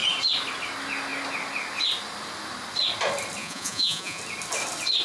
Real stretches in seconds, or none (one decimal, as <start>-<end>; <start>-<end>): 0.0-3.4; 4.2-5.0